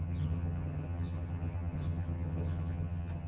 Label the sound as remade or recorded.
remade